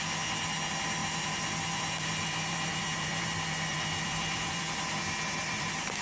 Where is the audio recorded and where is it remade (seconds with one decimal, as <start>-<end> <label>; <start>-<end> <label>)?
0.0-1.0 recorded; 1.0-4.6 remade; 4.6-5.4 recorded; 5.4-6.0 remade